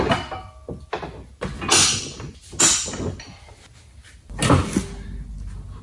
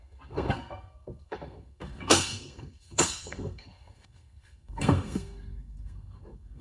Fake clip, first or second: second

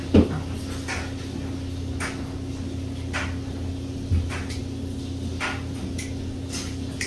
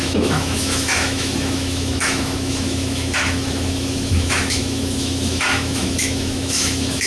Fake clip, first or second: second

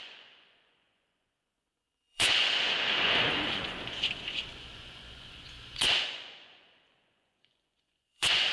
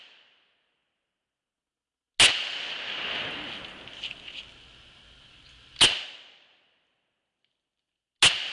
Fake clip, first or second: first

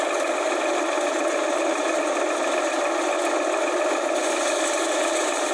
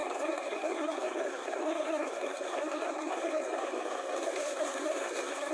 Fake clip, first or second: second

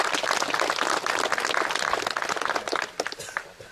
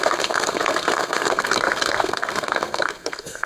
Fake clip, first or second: second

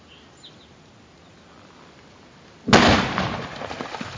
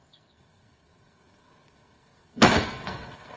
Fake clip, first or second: second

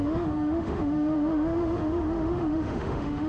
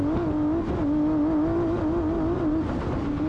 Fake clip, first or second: first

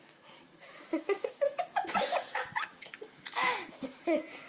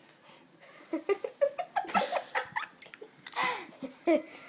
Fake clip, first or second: first